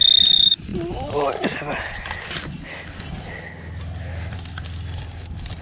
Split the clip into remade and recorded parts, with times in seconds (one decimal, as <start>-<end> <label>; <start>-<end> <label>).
0.0-5.6 recorded